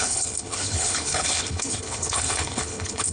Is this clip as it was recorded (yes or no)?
no